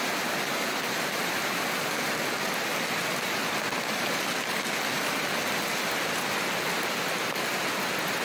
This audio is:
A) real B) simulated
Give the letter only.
A